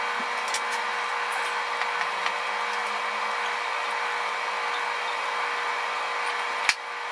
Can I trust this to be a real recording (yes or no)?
yes